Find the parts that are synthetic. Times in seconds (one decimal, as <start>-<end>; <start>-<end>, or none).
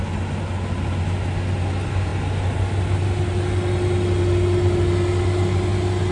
none